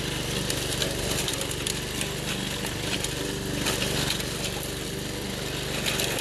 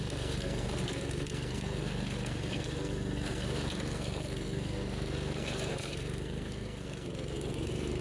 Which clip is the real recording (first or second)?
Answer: first